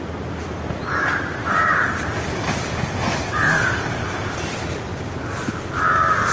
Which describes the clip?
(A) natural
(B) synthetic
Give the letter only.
A